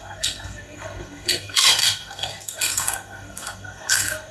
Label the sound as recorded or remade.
remade